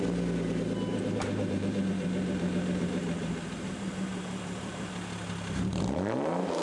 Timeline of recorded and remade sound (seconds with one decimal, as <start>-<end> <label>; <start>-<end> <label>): 0.0-0.9 recorded; 0.9-4.9 remade; 4.9-6.6 recorded